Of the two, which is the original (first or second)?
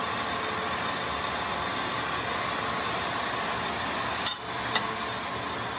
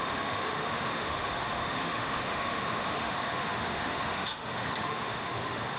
first